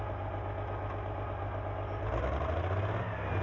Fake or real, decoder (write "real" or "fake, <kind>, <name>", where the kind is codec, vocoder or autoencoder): real